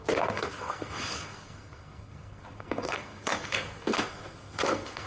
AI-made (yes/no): yes